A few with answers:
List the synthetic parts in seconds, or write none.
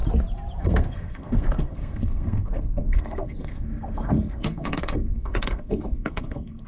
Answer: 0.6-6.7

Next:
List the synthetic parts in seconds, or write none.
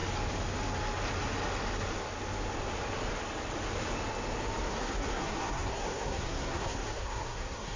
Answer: 4.7-7.8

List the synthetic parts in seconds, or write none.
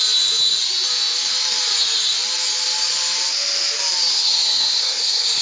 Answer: 4.1-5.4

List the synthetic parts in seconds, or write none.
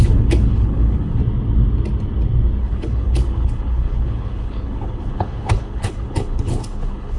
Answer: 0.0-1.2; 2.6-7.2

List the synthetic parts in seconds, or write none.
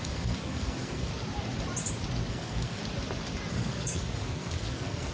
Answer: 0.0-1.1; 2.3-2.8; 3.5-5.1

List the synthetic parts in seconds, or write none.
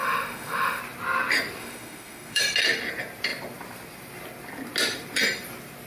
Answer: 0.0-0.8; 1.6-2.4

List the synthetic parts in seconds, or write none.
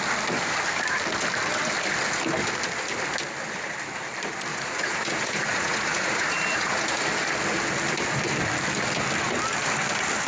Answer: 4.5-7.0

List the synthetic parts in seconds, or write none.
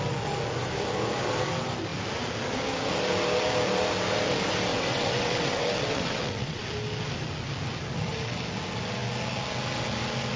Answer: 4.7-6.6